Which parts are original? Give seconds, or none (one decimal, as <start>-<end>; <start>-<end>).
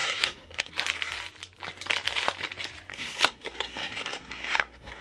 0.7-2.9